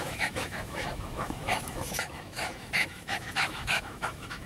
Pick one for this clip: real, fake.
fake